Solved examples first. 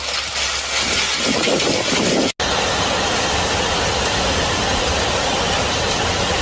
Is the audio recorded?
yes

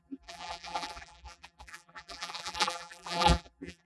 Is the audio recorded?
no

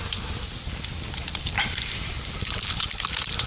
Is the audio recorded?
no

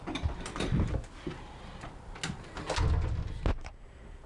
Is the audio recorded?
yes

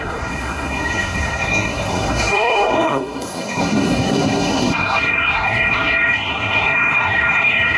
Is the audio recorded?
no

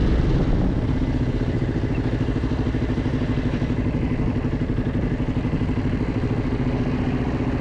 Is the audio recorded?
yes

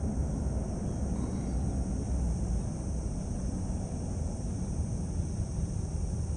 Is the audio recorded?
yes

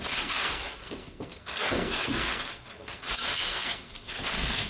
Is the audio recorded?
no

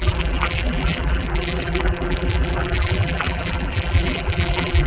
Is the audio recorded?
no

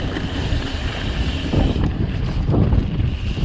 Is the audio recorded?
yes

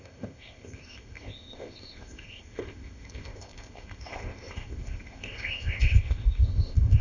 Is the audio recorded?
no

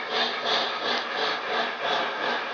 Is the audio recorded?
yes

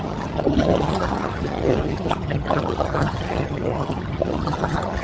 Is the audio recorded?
no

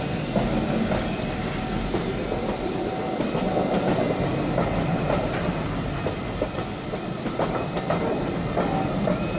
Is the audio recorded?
yes